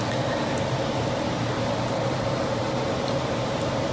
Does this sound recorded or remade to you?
recorded